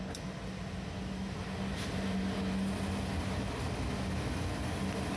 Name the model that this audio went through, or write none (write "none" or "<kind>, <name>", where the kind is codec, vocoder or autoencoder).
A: none